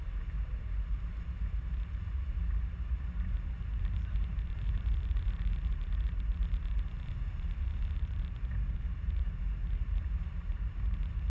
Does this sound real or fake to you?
fake